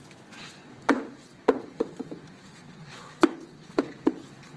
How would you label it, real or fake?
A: fake